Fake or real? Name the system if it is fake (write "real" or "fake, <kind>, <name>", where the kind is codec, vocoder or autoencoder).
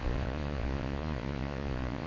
fake, vocoder, Vocos